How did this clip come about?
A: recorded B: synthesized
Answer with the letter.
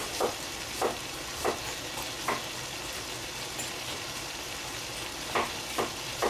A